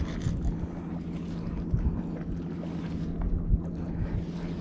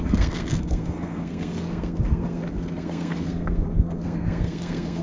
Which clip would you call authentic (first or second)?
first